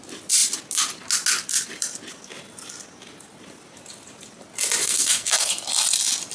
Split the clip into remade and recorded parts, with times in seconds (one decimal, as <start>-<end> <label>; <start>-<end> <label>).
0.0-4.8 recorded; 4.8-5.7 remade; 5.7-6.3 recorded